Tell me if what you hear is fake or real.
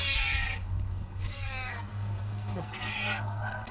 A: fake